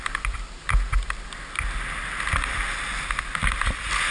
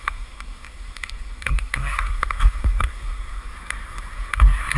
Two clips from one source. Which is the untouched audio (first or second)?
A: first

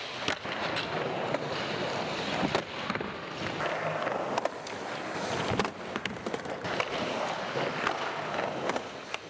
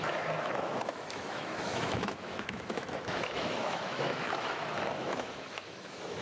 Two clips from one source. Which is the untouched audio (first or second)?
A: first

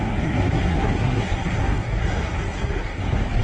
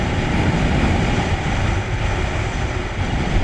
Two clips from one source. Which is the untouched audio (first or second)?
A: second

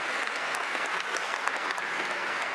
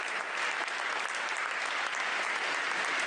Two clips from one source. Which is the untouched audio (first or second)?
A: second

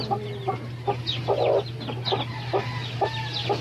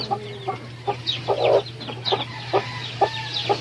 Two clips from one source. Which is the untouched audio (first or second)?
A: first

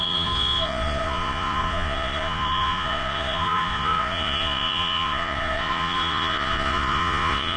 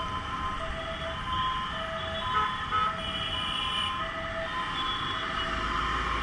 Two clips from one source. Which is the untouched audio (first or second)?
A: second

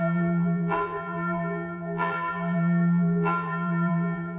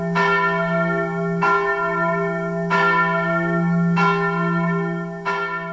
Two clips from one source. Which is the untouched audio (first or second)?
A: second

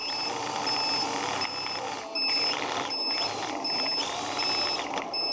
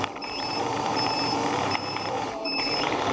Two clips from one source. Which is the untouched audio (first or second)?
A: first